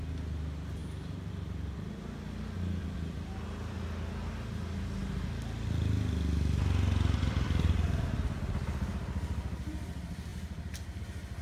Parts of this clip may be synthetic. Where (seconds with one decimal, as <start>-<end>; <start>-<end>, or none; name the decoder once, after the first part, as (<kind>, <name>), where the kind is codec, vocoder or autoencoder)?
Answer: none